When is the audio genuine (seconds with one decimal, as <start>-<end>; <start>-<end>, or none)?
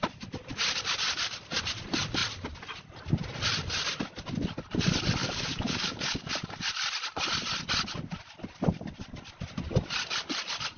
0.0-5.2; 6.3-10.8